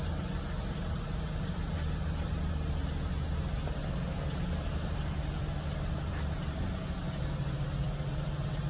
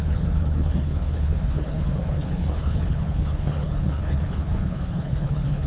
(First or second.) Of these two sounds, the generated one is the second